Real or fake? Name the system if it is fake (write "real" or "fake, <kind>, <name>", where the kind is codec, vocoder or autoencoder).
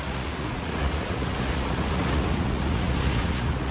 fake, vocoder, Vocos